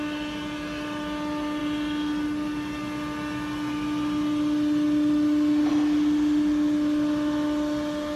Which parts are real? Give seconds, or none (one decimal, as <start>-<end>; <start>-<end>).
0.0-8.2